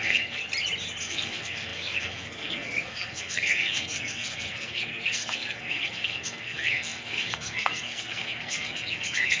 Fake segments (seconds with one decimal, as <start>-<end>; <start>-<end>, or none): 0.0-0.4; 1.0-9.4

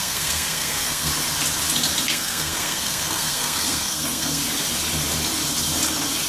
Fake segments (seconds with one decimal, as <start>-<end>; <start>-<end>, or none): 0.0-1.1; 2.0-4.4

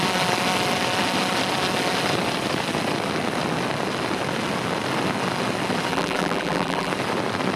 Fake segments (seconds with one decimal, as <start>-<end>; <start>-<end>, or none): 5.9-6.9

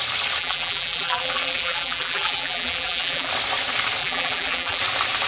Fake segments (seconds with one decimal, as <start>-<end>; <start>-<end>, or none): 0.4-3.3; 4.0-4.8

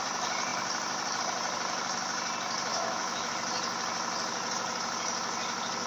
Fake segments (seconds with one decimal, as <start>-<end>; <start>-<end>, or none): 2.7-3.3

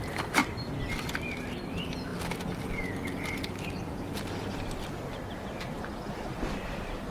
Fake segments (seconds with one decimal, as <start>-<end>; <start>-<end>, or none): none